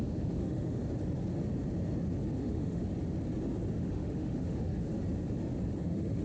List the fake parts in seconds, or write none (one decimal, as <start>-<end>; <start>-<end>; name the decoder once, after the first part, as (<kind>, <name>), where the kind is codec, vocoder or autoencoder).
0.0-0.8 (autoencoder, DAC-VAE); 2.4-2.8; 3.7-4.9; 5.8-6.2